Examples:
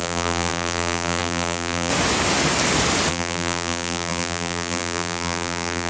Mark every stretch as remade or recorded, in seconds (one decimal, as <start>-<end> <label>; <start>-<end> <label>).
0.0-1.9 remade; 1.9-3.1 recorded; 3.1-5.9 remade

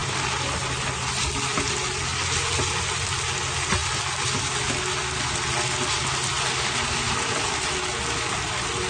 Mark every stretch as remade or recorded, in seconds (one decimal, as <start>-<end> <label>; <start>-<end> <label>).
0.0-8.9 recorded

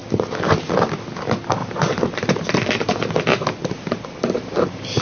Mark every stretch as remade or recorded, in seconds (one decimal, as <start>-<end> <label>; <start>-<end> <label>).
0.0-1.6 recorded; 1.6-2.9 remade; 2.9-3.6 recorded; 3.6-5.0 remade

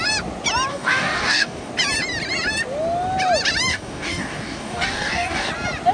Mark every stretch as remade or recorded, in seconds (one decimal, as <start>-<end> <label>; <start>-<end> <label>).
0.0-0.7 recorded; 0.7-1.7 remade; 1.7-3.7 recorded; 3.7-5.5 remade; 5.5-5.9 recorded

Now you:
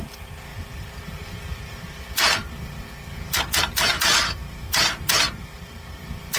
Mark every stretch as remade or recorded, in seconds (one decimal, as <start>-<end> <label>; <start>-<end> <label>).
0.0-6.4 recorded

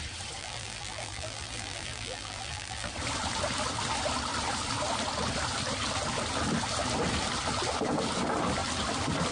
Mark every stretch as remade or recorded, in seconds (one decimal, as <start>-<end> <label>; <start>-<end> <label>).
0.0-0.4 recorded; 0.4-2.9 remade; 2.9-9.3 recorded